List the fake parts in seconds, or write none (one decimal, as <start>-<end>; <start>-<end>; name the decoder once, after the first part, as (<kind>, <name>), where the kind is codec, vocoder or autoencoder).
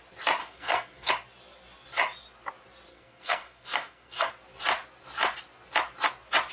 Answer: 0.4-1.1 (codec, SNAC); 2.9-4.3